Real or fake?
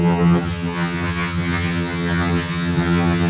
fake